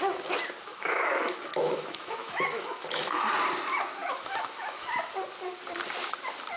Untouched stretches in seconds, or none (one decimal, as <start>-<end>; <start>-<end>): 0.0-0.7; 3.3-4.0; 5.1-6.6